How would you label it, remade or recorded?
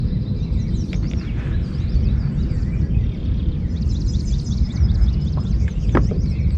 remade